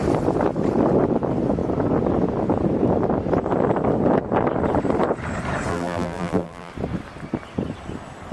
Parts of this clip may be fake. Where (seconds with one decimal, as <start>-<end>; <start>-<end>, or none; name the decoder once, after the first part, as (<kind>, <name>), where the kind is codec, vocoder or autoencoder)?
5.7-6.7 (vocoder, BigVGAN v2)